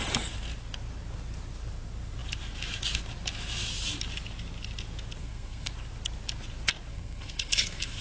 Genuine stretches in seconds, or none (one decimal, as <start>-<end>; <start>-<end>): 0.0-5.2; 5.7-6.9